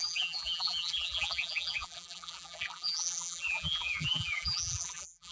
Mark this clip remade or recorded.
remade